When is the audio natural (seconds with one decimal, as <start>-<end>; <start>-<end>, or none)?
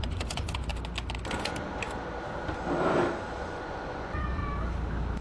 0.7-3.4; 4.4-5.2